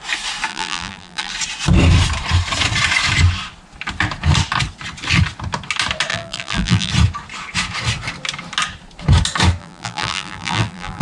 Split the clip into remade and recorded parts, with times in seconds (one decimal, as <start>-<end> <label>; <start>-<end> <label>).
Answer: 0.0-0.5 recorded; 0.5-1.3 remade; 1.3-6.1 recorded; 6.1-6.9 remade; 6.9-9.6 recorded; 9.6-11.0 remade